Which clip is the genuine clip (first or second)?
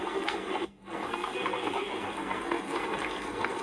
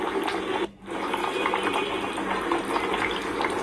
second